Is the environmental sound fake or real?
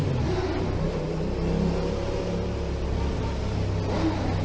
real